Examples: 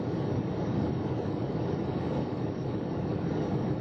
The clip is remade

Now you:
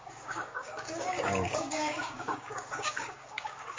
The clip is remade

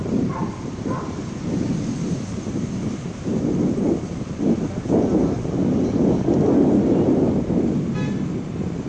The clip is recorded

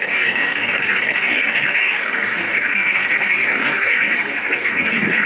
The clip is remade